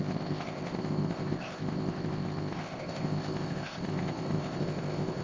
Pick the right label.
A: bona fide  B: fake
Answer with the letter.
B